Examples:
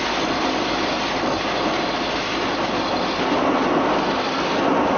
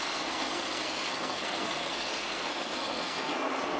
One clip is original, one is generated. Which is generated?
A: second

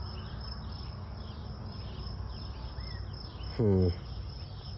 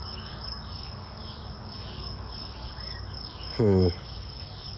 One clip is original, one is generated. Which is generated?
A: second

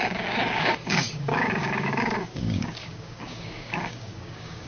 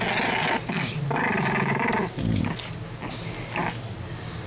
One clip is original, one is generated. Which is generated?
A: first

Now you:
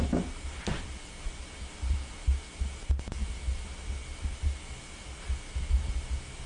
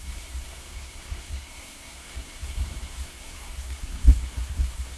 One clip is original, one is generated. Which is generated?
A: second